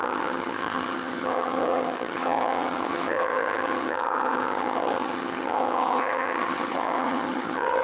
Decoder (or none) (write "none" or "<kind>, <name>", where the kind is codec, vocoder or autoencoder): vocoder, HiFi-GAN